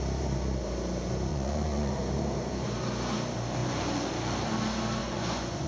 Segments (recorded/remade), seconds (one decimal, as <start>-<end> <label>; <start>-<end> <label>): 0.0-1.3 recorded; 1.3-1.9 remade; 1.9-5.0 recorded; 5.0-5.7 remade